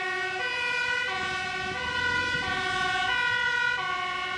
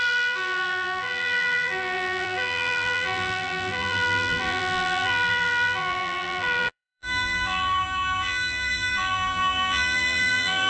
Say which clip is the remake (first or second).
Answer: second